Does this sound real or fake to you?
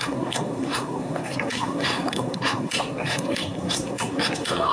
fake